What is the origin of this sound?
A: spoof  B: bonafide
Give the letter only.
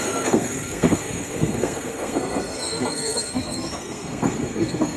A